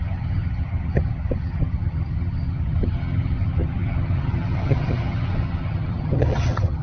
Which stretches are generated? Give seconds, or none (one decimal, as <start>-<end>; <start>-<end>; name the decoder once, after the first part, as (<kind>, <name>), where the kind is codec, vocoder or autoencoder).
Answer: 0.0-6.8 (vocoder, HiFi-GAN)